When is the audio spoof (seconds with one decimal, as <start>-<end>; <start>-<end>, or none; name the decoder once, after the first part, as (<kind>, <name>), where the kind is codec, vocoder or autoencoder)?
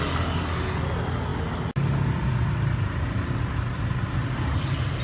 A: none